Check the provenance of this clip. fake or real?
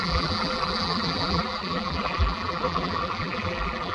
fake